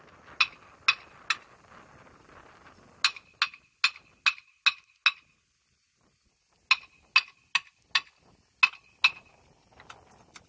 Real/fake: real